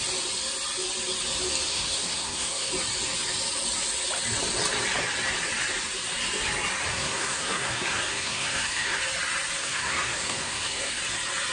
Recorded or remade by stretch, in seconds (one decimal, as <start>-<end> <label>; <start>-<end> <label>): 0.0-1.7 recorded; 1.7-2.7 remade; 2.7-6.9 recorded; 6.9-9.0 remade; 9.0-9.6 recorded; 9.6-11.0 remade; 11.0-11.5 recorded